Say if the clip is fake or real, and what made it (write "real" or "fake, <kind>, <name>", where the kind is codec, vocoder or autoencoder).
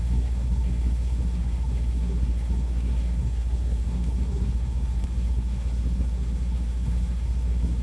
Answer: fake, codec, SNAC